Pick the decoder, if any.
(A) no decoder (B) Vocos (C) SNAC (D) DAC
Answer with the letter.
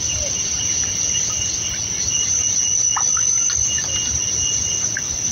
A